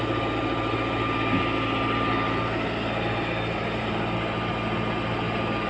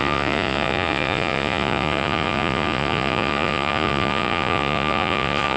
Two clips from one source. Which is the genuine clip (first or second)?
first